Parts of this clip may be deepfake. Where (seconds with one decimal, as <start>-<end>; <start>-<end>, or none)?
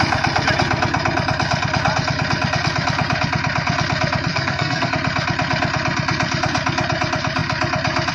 4.3-4.9